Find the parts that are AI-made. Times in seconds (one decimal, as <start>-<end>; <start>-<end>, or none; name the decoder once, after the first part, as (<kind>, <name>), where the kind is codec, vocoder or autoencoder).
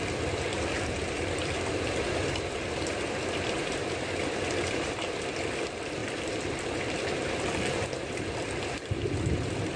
0.0-9.8 (vocoder, BigVGAN v2)